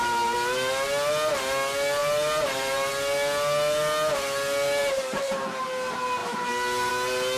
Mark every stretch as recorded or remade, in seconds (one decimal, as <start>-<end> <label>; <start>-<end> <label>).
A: 0.0-2.0 recorded; 2.0-2.9 remade; 2.9-4.8 recorded; 4.8-5.6 remade; 5.6-7.4 recorded